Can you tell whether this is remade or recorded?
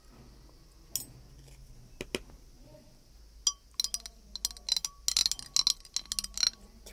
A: recorded